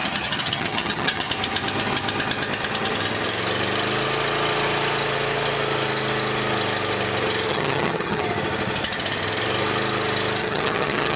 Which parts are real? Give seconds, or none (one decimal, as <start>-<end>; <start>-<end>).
1.3-7.5; 8.2-10.4